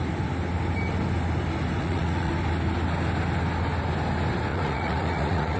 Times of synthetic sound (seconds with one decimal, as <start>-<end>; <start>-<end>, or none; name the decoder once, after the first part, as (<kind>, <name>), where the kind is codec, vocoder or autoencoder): 1.8-2.3 (vocoder, Vocos); 4.5-5.6